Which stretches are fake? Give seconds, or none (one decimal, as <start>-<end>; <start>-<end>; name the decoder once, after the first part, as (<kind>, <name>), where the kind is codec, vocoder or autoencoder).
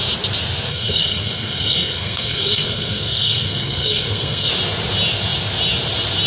0.7-4.5 (codec, SNAC)